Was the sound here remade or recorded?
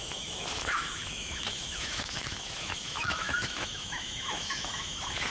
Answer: remade